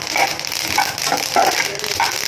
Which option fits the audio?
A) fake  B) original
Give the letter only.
B